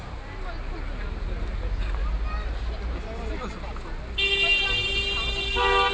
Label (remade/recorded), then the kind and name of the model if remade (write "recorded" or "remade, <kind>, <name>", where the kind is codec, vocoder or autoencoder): recorded